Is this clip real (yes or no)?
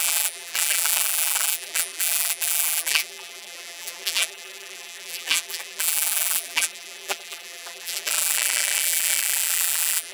no